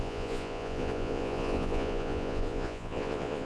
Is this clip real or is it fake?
fake